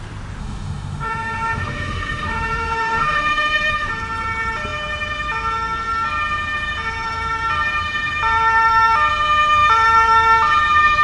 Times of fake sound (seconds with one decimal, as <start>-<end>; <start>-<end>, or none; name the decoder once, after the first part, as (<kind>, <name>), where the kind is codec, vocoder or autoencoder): 0.4-3.9 (autoencoder, DAC-VAE)